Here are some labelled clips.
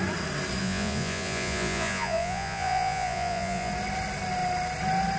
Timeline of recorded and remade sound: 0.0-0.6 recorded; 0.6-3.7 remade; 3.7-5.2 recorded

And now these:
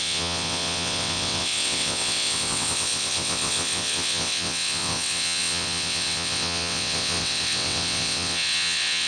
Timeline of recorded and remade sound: 0.0-9.1 remade